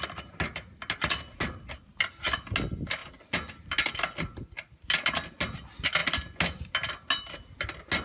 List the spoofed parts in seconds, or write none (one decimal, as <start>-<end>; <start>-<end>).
none